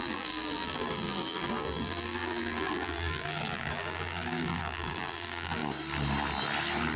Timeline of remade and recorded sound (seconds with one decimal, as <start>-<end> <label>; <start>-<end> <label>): 0.0-5.6 remade; 5.6-7.0 recorded